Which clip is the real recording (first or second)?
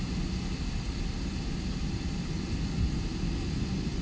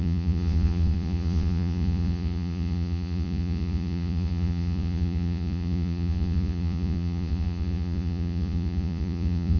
first